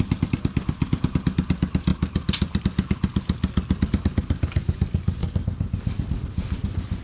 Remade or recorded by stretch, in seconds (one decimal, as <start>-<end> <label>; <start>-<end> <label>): 0.0-1.9 recorded; 1.9-2.6 remade; 2.6-5.2 recorded; 5.2-6.6 remade; 6.6-7.0 recorded